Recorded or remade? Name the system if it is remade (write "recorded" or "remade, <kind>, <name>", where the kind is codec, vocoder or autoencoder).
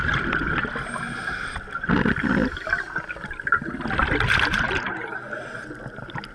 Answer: recorded